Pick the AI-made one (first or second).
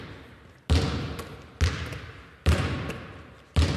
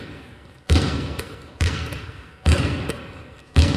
second